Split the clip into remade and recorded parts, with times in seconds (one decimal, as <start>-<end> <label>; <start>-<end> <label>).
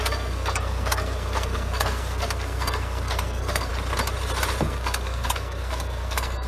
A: 0.0-3.7 remade; 3.7-4.6 recorded; 4.6-6.5 remade